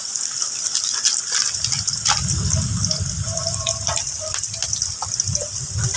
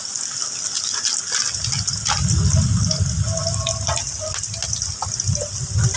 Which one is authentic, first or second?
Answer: second